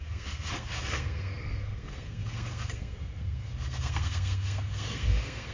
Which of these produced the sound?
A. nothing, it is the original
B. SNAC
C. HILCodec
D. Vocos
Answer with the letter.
B